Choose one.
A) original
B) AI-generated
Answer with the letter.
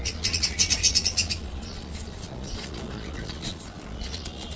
B